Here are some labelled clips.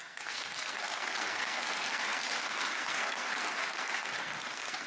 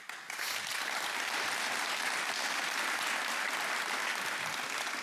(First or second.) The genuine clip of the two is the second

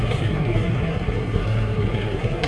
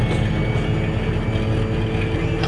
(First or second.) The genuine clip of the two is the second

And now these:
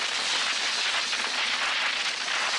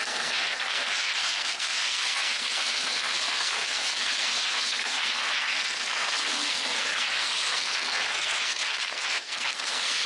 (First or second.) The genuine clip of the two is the first